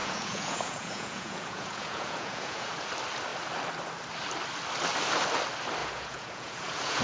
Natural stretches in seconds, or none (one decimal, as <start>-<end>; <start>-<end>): 2.9-5.8